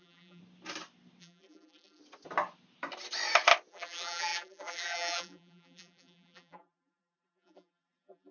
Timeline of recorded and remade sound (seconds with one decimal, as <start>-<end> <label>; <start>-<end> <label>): 0.0-0.4 remade; 0.4-1.2 recorded; 1.2-2.0 remade; 2.0-3.7 recorded; 3.7-8.3 remade